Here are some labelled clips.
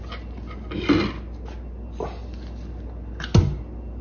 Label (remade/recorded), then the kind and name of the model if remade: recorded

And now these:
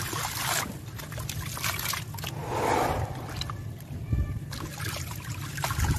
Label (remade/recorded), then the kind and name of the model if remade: recorded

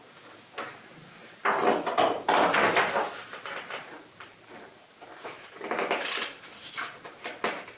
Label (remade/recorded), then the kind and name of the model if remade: remade, vocoder, BigVGAN v2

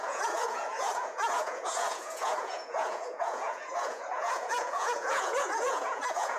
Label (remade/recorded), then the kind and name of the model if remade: remade, vocoder, Vocos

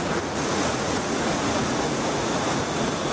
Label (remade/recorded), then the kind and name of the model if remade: remade, vocoder, Vocos